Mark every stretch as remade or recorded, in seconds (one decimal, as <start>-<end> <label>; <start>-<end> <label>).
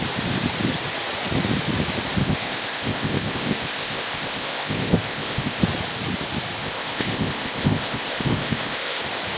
0.0-2.2 recorded; 2.2-5.6 remade; 5.6-6.6 recorded; 6.6-9.0 remade; 9.0-9.4 recorded